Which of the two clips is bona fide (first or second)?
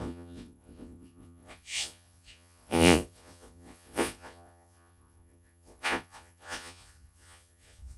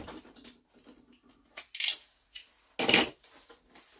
second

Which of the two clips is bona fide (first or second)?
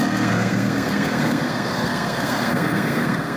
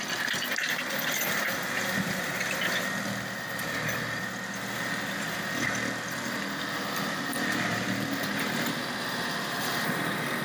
second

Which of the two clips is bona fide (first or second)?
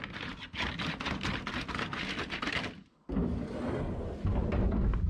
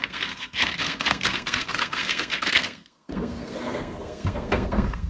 first